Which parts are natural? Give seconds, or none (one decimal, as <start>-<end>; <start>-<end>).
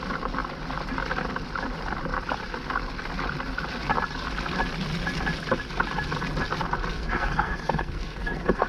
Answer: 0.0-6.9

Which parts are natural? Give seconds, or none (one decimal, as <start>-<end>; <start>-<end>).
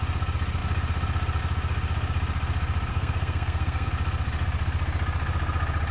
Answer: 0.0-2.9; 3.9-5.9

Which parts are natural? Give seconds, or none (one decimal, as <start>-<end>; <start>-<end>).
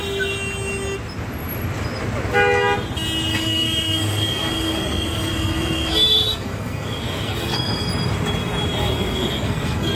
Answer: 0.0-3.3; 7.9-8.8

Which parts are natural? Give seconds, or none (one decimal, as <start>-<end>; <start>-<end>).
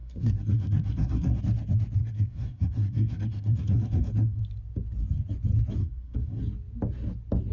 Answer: 1.4-2.0; 4.4-5.8; 6.4-7.5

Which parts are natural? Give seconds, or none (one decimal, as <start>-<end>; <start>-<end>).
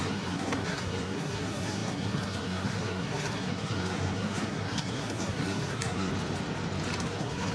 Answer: 6.1-7.0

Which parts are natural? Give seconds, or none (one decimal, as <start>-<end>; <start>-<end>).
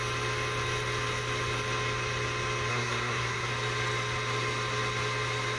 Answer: 0.0-2.7; 3.5-5.6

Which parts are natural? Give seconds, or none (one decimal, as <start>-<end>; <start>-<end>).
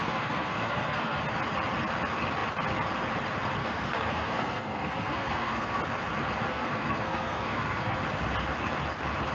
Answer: 1.2-3.6; 5.8-6.5; 8.0-9.3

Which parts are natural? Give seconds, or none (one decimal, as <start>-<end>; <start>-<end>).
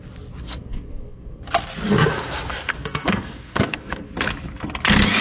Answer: 0.0-0.4; 1.4-2.7; 4.1-5.2